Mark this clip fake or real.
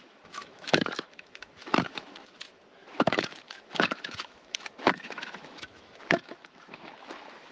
fake